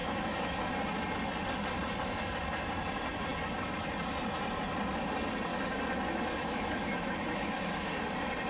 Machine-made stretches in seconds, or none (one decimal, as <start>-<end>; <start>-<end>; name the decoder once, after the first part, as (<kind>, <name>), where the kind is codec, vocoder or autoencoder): 0.0-0.7 (autoencoder, DAC-VAE); 5.5-7.9